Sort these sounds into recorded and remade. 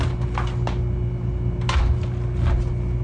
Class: recorded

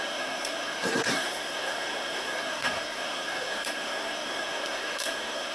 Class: remade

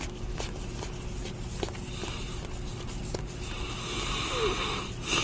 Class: recorded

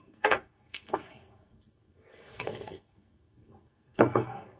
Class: remade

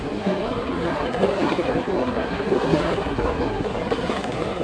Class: remade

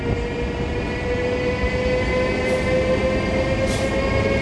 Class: recorded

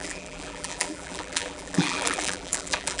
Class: remade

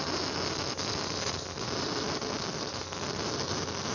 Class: recorded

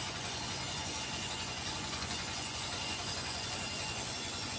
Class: remade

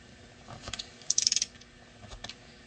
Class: remade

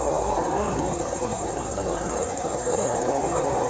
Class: remade